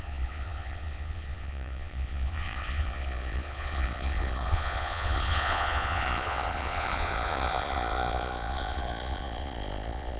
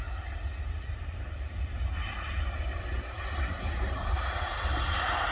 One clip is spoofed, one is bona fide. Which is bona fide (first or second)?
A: second